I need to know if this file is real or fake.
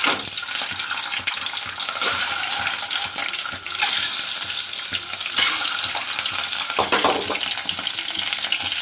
real